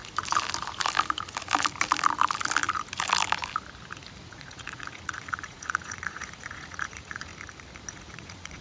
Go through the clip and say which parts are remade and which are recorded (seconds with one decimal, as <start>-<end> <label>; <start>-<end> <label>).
0.0-4.3 recorded; 4.3-7.3 remade; 7.3-7.9 recorded; 7.9-8.6 remade